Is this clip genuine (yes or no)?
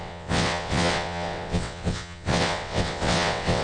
no